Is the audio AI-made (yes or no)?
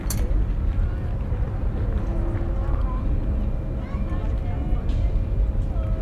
no